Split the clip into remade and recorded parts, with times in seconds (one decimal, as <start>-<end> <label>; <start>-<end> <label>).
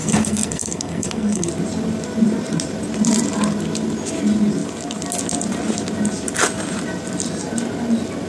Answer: 0.0-1.5 remade; 1.5-8.3 recorded